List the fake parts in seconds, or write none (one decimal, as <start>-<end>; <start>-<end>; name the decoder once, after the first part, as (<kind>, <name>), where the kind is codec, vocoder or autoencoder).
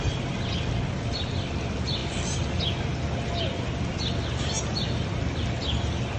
none